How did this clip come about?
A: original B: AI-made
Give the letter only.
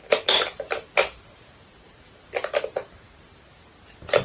A